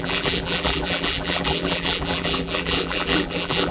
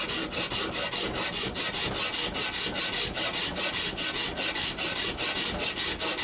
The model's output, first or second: first